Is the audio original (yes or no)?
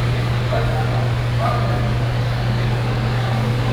no